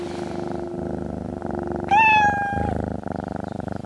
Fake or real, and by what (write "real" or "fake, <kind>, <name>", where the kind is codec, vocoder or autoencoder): real